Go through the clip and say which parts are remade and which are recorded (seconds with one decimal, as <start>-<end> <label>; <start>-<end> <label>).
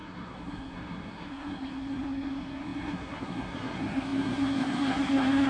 0.0-5.5 remade